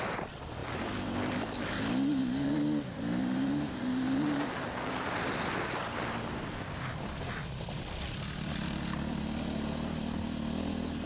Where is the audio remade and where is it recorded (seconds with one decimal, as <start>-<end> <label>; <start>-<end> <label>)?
0.0-11.1 recorded